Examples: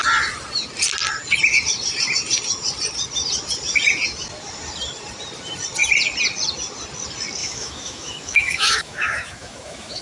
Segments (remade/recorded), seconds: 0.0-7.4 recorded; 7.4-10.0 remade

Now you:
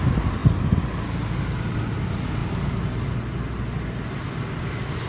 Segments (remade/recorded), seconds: 0.0-5.1 recorded

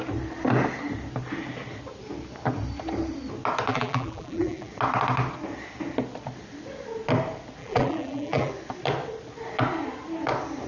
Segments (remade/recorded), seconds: 0.0-3.7 recorded; 3.7-4.7 remade; 4.7-7.6 recorded; 7.6-8.5 remade; 8.5-10.7 recorded

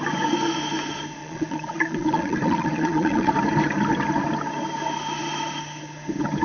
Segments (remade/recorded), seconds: 0.0-1.2 recorded; 1.2-3.3 remade; 3.3-6.4 recorded

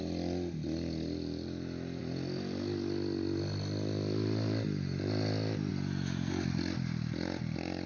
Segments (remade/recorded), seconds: 0.0-7.9 recorded